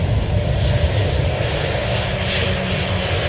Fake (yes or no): no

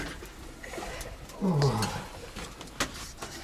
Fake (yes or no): no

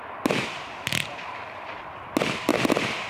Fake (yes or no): no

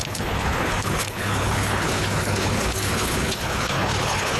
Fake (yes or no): yes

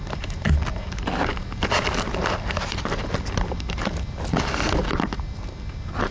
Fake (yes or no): no